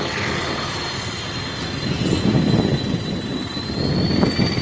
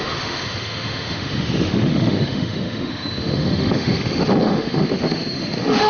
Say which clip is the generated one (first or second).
second